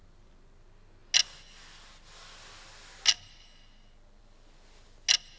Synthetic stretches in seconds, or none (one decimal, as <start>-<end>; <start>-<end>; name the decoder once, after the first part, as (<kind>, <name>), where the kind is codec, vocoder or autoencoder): none